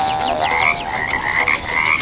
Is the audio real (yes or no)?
yes